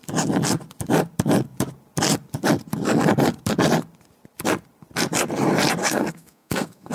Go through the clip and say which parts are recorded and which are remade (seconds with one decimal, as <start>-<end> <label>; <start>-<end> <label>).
0.0-5.8 recorded; 5.8-6.9 remade